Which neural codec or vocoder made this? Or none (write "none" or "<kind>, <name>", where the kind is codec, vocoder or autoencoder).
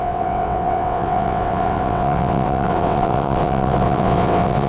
vocoder, WaveNeXt